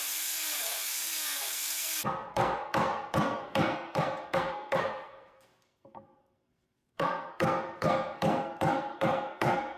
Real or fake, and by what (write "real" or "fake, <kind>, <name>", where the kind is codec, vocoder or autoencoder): fake, codec, SNAC